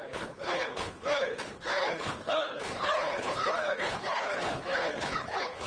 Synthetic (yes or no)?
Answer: yes